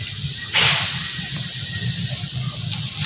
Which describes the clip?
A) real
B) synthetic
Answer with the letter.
A